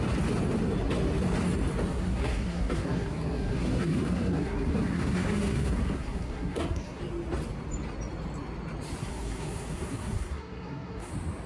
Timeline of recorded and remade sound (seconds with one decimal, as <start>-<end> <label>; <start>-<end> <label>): 0.0-1.9 recorded; 1.9-7.0 remade; 7.0-9.0 recorded; 9.0-11.1 remade; 11.1-11.5 recorded